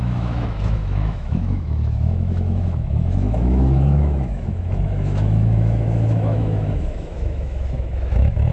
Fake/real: fake